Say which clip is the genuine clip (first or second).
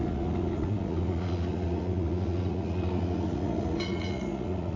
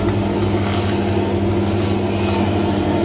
second